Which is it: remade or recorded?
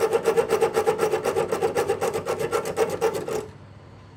recorded